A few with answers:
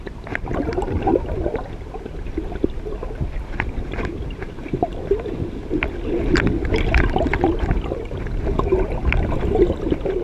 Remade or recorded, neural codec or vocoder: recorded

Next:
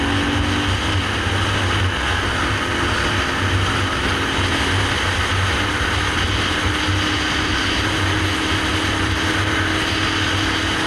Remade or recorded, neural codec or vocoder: recorded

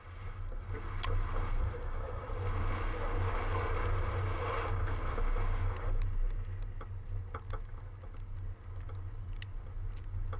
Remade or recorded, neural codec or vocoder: recorded